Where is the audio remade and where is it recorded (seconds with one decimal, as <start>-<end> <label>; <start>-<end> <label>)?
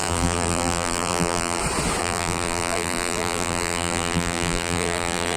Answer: 0.0-1.6 remade; 1.6-2.0 recorded; 2.0-5.4 remade